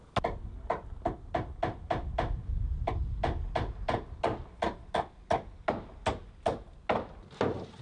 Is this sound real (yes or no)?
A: yes